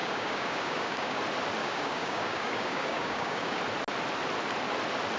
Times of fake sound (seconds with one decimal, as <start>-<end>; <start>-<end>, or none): 0.0-1.2; 1.6-3.6